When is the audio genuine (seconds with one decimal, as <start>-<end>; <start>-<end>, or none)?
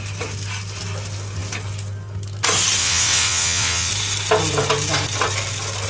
0.0-2.8; 3.9-5.9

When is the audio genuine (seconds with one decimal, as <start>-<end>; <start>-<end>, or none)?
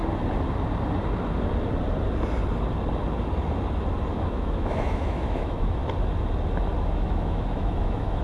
0.0-4.1; 5.8-6.8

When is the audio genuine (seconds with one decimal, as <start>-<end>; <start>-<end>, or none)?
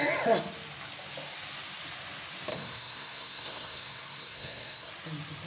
0.0-2.5; 4.9-5.5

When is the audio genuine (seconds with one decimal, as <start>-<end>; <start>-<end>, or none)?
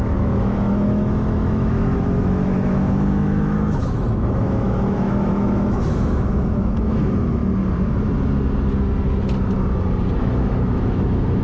7.4-10.2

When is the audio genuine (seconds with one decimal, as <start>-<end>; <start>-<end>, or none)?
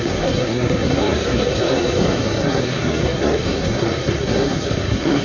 none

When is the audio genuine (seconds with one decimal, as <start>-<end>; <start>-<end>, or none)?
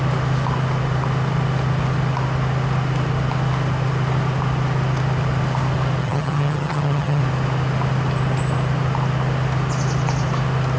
0.0-6.0; 7.2-10.8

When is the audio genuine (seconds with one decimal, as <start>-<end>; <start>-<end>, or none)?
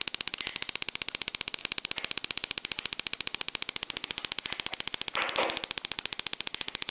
0.0-6.9